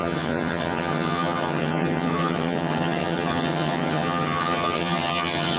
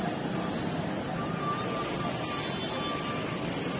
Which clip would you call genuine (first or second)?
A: second